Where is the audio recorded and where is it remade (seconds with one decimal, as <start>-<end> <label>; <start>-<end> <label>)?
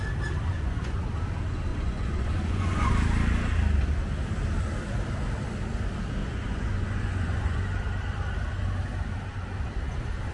0.0-0.5 recorded; 0.5-1.1 remade; 1.1-1.7 recorded; 1.7-2.9 remade; 2.9-6.2 recorded; 6.2-7.6 remade; 7.6-10.3 recorded